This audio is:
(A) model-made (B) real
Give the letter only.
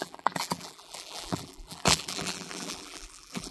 A